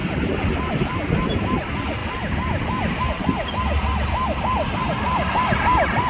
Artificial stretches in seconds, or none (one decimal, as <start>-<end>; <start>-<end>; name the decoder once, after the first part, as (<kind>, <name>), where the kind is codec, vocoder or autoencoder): 0.0-1.0 (vocoder, BigVGAN v2); 2.0-3.1